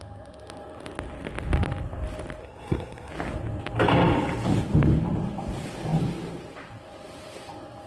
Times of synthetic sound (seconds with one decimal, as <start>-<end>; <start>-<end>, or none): 2.4-3.1